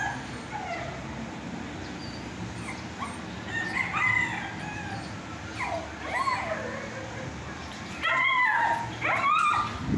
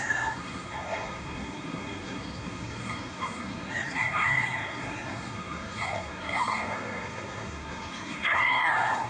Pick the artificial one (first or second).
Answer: second